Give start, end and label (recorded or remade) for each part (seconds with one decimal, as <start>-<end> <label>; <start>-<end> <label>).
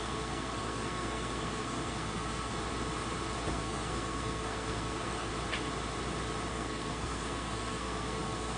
0.0-2.5 remade; 2.5-3.5 recorded; 3.5-5.3 remade; 5.3-6.5 recorded; 6.5-8.6 remade